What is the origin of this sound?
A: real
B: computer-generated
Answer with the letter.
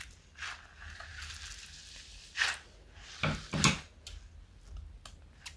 A